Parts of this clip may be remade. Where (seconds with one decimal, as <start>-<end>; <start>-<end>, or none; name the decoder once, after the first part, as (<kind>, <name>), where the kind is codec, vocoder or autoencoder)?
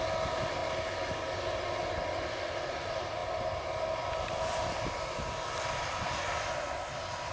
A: none